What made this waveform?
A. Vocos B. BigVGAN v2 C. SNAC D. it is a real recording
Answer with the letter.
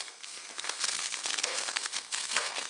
C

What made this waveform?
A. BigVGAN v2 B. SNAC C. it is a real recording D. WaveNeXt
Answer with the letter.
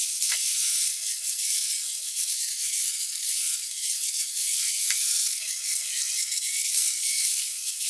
B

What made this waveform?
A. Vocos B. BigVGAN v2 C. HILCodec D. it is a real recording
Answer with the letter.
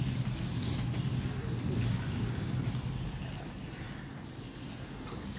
D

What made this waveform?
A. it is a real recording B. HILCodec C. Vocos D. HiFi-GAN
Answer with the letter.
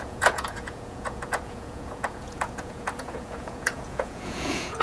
C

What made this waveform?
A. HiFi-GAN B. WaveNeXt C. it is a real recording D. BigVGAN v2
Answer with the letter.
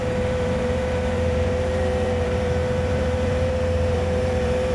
D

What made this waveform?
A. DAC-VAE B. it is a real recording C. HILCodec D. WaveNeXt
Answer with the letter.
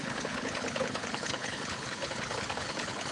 C